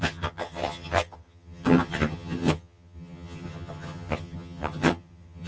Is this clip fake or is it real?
fake